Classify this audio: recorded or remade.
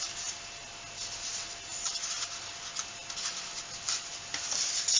recorded